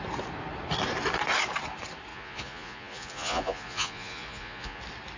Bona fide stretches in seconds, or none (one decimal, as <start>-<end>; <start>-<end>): 0.0-2.1; 4.8-5.2